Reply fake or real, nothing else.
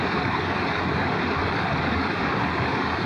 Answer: fake